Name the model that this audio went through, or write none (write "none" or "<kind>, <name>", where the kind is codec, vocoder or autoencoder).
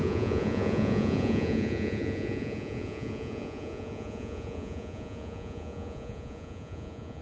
vocoder, Vocos